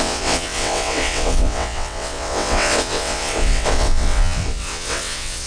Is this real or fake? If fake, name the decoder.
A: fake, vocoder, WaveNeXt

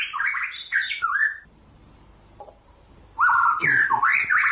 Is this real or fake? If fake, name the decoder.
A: fake, vocoder, BigVGAN v2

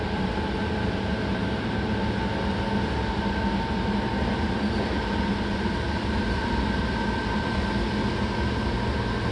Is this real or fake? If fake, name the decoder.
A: real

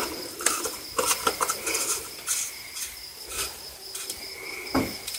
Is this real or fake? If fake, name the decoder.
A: real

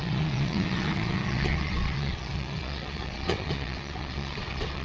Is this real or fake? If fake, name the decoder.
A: fake, vocoder, WaveNeXt